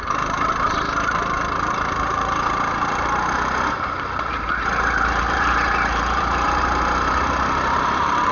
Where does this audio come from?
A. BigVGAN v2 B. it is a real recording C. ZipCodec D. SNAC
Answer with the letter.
A